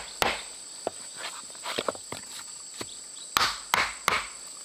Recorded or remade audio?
recorded